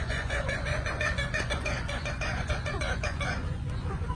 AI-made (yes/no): yes